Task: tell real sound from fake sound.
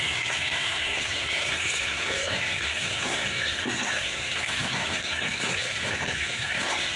fake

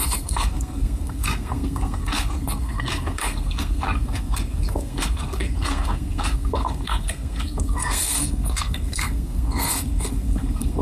fake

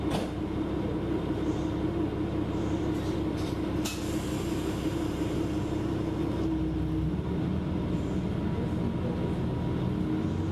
real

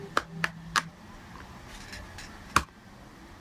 real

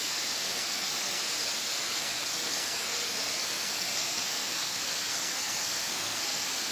fake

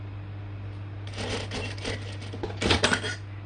real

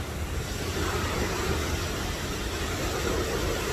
real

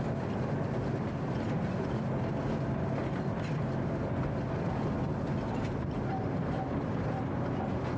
real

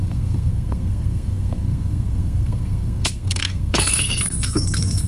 fake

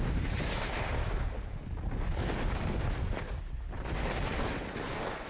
real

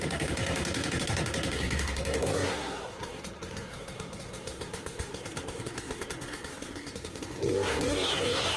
fake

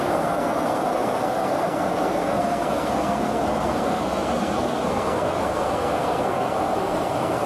fake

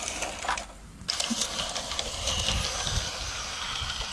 real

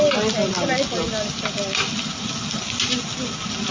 real